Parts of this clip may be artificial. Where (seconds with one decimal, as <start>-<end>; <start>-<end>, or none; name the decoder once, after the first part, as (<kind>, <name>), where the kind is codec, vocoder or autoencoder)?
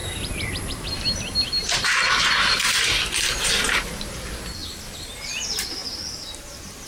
0.0-4.1 (vocoder, BigVGAN v2); 5.8-6.5